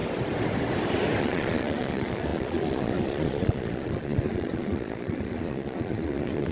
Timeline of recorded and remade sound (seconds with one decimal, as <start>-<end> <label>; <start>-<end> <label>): 0.0-1.2 recorded; 1.2-6.5 remade